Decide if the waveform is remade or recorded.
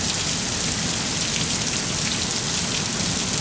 recorded